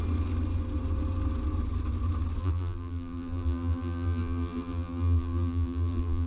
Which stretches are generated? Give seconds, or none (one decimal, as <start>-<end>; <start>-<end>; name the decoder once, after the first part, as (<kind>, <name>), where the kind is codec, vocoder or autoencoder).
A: 2.4-6.3 (vocoder, BigVGAN v2)